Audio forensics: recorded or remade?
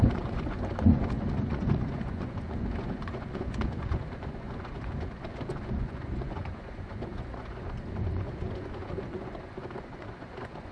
remade